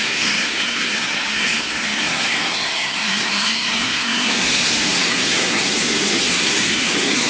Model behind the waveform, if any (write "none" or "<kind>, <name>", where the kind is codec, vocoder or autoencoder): codec, SNAC